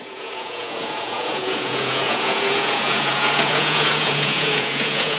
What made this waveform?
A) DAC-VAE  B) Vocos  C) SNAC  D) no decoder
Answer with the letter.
B